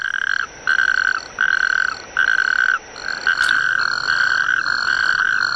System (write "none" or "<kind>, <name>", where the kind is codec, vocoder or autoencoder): none